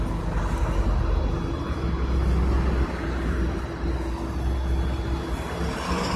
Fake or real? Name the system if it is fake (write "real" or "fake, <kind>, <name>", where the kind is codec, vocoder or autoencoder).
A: real